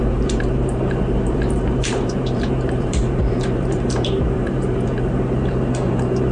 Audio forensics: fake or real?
fake